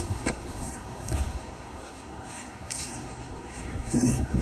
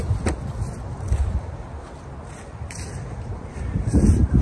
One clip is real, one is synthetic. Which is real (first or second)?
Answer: second